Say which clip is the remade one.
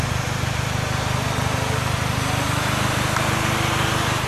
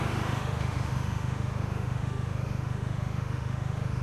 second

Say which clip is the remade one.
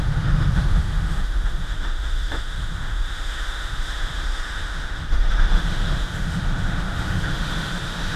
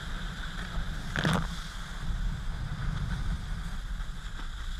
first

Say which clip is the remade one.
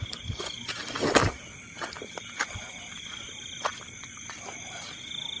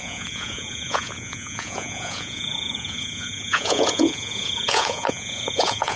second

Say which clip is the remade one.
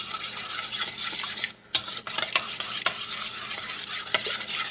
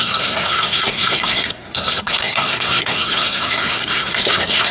second